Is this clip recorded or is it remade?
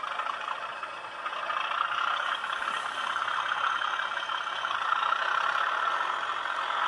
recorded